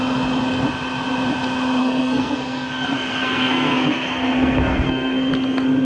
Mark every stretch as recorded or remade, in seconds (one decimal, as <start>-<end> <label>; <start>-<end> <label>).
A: 0.0-1.8 recorded; 1.8-5.3 remade; 5.3-5.8 recorded